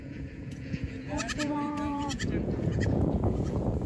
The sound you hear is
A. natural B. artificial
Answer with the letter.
B